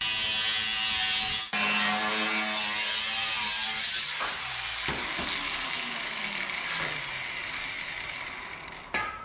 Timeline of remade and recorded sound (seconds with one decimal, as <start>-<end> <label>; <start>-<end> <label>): 0.0-9.2 recorded